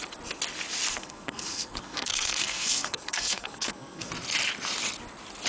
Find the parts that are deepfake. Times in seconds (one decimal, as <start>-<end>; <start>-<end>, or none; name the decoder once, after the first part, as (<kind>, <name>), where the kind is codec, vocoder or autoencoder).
0.9-4.1 (codec, SNAC)